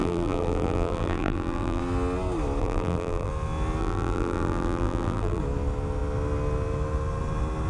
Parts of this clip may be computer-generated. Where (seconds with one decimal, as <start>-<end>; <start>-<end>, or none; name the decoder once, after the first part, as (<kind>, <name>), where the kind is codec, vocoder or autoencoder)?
0.0-1.8 (vocoder, BigVGAN v2); 2.6-3.3; 3.8-5.4